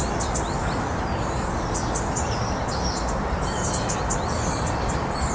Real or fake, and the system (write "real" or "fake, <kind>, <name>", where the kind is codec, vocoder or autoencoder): real